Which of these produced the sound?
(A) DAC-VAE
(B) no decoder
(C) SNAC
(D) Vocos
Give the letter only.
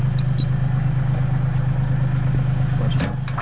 B